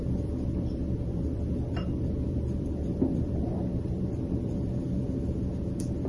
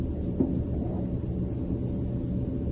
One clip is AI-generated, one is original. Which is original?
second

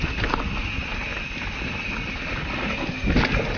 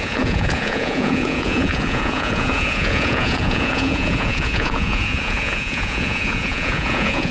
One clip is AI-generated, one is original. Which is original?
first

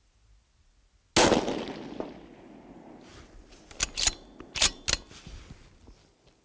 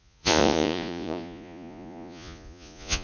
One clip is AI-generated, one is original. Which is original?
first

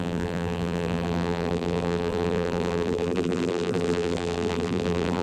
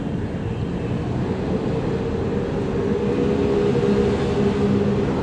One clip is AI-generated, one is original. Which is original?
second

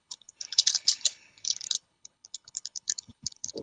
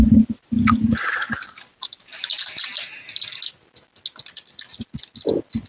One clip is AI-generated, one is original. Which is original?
second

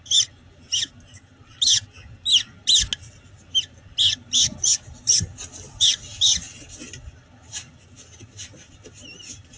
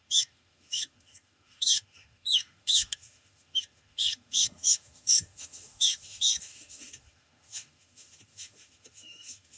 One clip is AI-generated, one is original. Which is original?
first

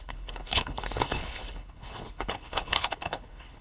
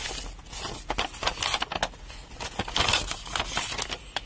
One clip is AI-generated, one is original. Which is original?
second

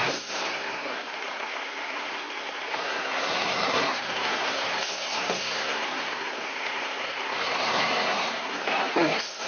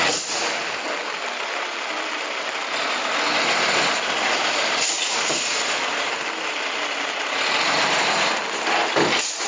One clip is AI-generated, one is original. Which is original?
second